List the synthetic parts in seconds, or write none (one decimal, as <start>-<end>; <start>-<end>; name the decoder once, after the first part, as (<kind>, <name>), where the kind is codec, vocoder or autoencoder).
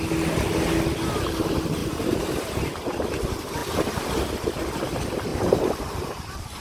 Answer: 1.8-3.1 (vocoder, BigVGAN v2); 5.3-6.6